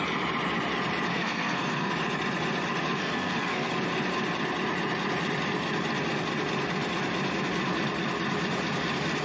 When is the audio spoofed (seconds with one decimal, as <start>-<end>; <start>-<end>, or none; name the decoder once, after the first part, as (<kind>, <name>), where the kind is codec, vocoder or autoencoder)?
1.1-1.9 (codec, SNAC); 3.0-3.7